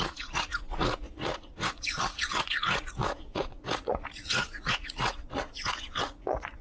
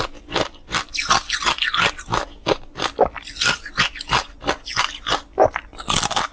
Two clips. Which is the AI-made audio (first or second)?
first